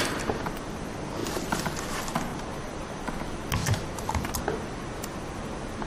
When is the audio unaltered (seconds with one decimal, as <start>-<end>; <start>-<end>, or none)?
0.0-1.2; 1.8-2.3; 3.0-3.6; 4.4-5.9